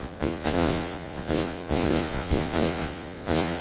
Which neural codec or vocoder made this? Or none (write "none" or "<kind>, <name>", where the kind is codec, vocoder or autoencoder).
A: vocoder, Vocos